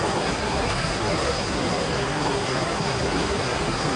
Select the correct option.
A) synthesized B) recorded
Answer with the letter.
A